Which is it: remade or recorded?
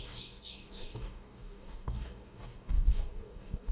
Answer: remade